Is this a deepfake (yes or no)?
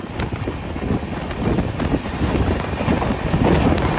no